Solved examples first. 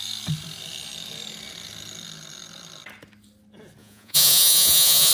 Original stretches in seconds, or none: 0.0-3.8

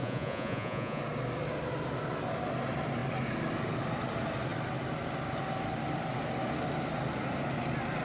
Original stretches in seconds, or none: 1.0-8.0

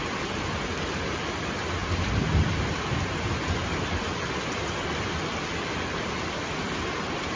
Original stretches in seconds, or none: 0.0-7.4

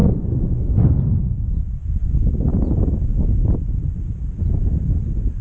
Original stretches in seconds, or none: 0.8-5.4

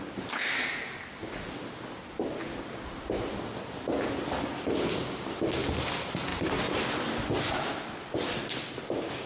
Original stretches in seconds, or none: 0.0-9.3

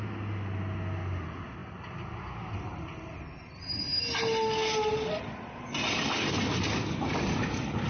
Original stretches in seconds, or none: 0.0-7.9

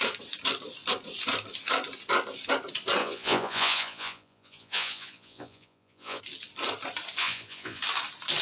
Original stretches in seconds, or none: 0.0-3.0; 6.2-7.2; 7.8-8.4

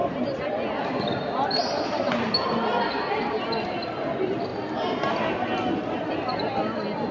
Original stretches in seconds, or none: 0.0-7.1